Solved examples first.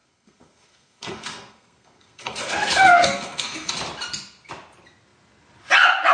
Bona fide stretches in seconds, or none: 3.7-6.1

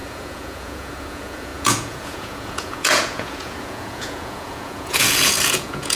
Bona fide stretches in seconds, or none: none

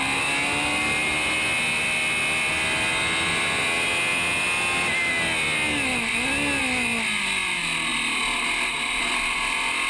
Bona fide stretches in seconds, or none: 0.0-9.9

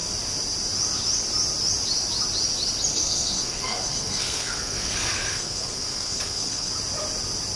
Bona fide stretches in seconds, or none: 0.0-2.9; 6.7-7.6

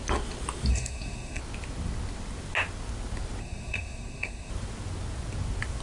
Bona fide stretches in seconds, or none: 0.0-0.7; 1.4-3.4; 4.5-5.8